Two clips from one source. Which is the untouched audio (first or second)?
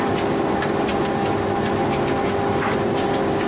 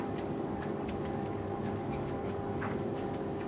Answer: first